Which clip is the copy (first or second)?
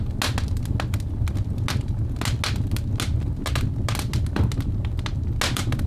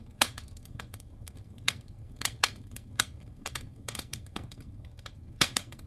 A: second